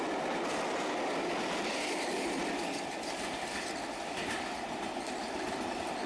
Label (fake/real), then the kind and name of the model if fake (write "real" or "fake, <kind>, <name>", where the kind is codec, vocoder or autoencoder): real